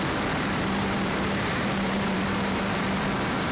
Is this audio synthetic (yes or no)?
yes